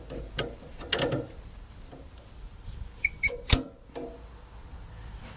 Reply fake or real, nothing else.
real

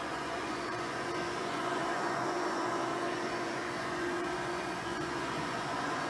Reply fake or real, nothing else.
fake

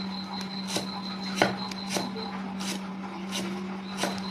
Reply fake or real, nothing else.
real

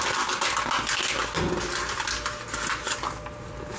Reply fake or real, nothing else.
real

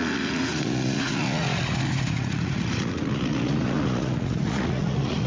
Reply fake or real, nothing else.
fake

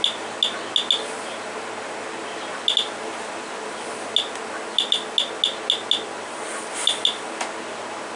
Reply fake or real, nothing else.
real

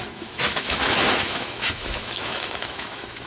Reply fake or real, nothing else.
fake